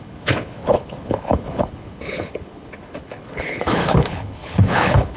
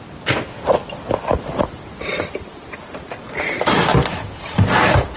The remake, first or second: first